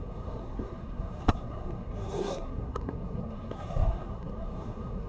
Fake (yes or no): yes